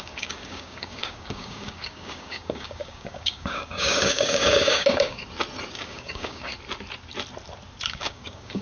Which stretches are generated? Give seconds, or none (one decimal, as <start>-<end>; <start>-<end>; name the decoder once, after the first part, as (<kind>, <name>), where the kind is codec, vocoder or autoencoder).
0.0-5.2 (codec, DAC); 5.7-6.5; 7.9-8.6